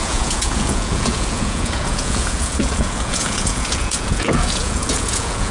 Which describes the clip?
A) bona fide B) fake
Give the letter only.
B